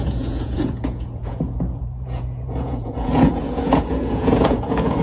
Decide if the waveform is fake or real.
fake